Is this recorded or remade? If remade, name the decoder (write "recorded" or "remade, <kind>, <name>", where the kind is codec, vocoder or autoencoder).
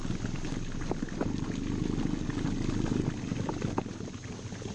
recorded